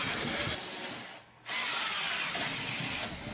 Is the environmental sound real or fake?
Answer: real